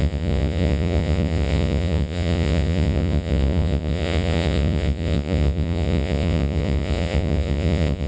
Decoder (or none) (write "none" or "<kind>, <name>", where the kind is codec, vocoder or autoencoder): vocoder, Vocos